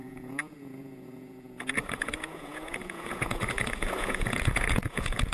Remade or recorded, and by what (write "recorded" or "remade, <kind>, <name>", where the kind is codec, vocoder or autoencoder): remade, vocoder, Vocos